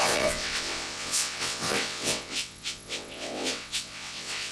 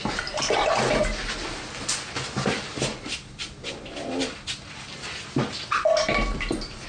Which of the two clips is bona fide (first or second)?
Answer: second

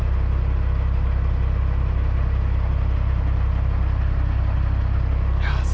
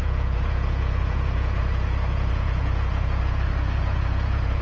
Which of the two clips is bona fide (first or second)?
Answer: first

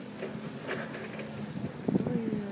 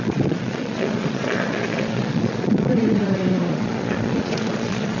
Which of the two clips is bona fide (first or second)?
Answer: first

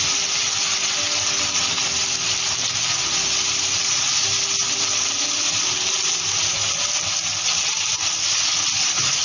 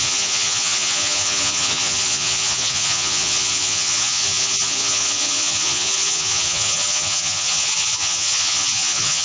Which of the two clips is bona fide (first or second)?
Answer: first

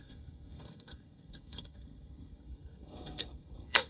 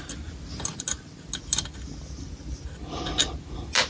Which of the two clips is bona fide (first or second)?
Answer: second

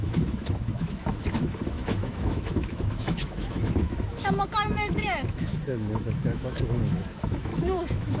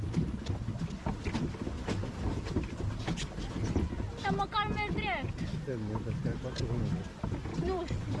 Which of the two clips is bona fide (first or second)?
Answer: second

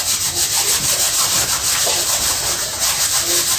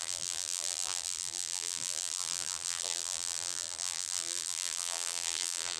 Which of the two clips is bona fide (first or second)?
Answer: first